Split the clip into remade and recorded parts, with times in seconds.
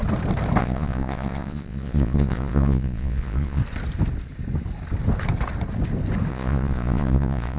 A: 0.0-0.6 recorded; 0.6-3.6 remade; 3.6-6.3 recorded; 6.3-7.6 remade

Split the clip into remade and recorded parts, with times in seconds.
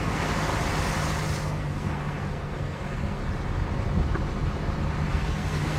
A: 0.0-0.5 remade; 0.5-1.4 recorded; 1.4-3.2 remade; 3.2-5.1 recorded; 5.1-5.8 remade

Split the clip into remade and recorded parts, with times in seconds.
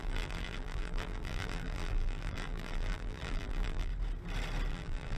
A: 0.0-3.9 remade; 3.9-4.7 recorded; 4.7-5.2 remade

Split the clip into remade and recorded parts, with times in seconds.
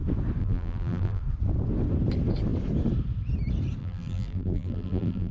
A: 0.0-0.4 recorded; 0.4-1.2 remade; 1.2-3.8 recorded; 3.8-5.3 remade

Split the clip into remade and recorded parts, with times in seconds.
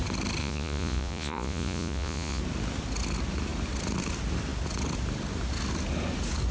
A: 0.0-0.4 recorded; 0.4-2.4 remade; 2.4-6.5 recorded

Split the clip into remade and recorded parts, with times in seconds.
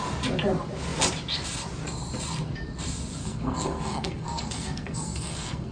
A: 0.0-3.2 recorded; 3.2-5.7 remade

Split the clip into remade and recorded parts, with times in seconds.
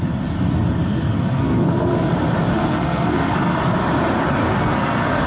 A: 0.0-0.9 recorded; 0.9-2.1 remade; 2.1-2.5 recorded; 2.5-3.6 remade; 3.6-4.4 recorded; 4.4-5.3 remade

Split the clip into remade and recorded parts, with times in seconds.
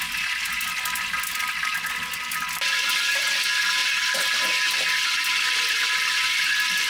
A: 0.0-6.9 recorded